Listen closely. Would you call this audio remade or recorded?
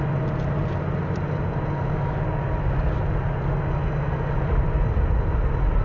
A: recorded